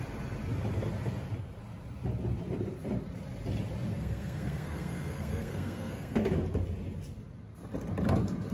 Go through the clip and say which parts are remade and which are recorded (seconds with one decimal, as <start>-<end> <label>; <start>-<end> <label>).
0.0-3.9 recorded; 3.9-6.3 remade; 6.3-8.5 recorded